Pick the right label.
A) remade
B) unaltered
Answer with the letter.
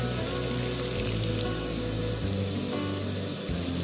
B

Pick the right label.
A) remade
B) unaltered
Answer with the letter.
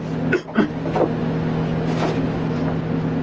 B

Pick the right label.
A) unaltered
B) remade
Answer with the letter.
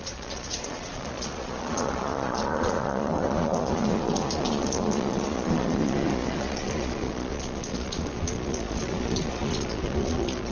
B